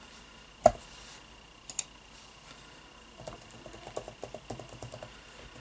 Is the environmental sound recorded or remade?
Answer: recorded